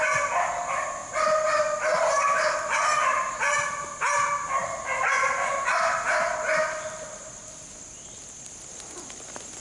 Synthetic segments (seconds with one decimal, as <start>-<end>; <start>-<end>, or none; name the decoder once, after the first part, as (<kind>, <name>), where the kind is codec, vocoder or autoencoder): none

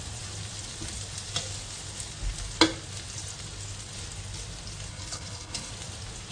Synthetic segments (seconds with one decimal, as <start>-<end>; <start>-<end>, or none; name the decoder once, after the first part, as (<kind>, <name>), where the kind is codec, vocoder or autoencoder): 4.9-5.7 (codec, HILCodec)